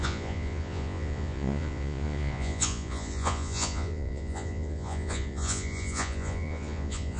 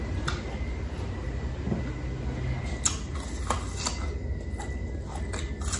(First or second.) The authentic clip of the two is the second